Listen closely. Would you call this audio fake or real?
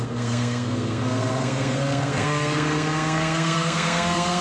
fake